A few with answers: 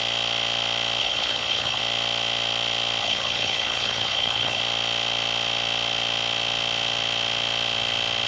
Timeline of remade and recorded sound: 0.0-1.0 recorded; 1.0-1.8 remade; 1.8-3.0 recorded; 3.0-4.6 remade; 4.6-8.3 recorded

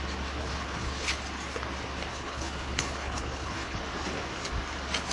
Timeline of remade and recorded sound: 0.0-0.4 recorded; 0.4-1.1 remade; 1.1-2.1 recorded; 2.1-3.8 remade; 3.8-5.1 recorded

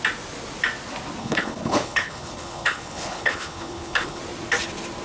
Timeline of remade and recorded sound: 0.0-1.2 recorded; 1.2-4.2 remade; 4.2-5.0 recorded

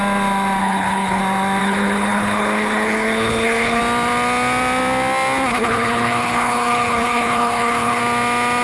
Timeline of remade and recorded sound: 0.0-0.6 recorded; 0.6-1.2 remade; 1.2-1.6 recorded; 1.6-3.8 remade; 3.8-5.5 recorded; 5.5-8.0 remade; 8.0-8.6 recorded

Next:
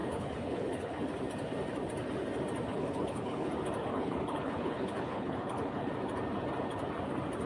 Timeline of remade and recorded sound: 0.0-1.0 remade; 1.0-2.7 recorded; 2.7-3.5 remade; 3.5-3.9 recorded; 3.9-5.9 remade; 5.9-7.5 recorded

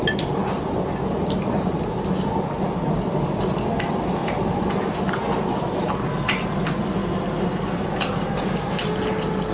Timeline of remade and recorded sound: 0.0-9.5 recorded